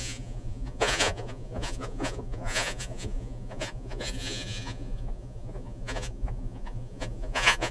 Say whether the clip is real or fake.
fake